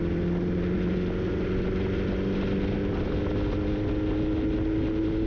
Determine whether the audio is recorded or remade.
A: recorded